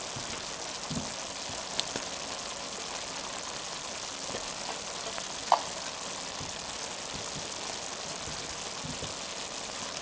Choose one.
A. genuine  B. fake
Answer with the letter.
A